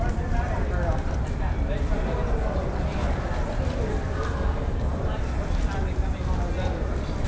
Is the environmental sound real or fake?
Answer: real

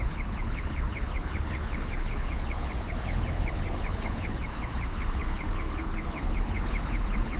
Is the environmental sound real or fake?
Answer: fake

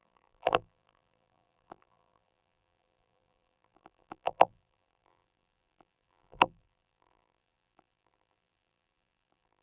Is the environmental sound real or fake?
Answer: fake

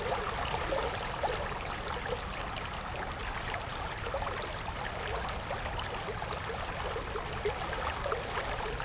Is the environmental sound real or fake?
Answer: real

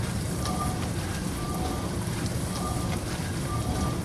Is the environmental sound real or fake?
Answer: real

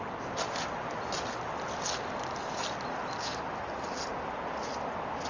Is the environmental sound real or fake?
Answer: real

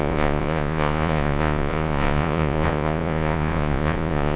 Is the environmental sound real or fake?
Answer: fake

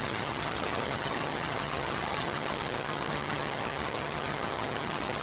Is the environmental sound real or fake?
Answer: fake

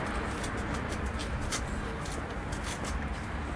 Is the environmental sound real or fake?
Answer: real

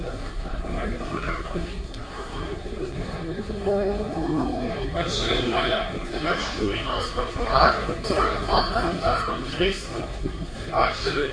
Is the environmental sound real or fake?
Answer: fake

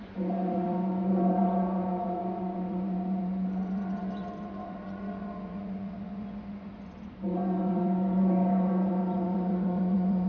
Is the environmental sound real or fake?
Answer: fake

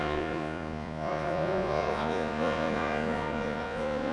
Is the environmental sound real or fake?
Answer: fake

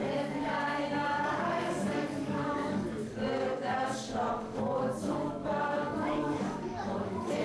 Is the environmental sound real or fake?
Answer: fake